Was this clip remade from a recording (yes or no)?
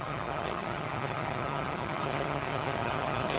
yes